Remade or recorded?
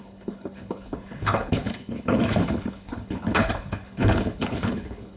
remade